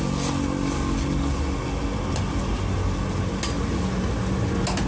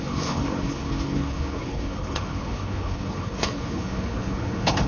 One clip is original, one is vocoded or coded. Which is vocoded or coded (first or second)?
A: second